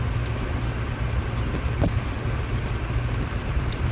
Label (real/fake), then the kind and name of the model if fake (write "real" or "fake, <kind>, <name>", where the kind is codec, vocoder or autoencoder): real